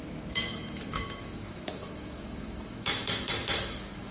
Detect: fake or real fake